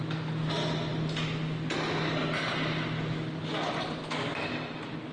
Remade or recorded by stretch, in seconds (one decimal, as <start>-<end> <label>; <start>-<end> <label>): 0.0-5.1 recorded

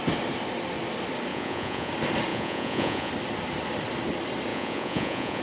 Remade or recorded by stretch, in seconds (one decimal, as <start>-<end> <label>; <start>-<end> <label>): 0.0-1.3 recorded; 1.3-1.9 remade; 1.9-2.3 recorded; 2.3-3.1 remade; 3.1-4.5 recorded; 4.5-5.4 remade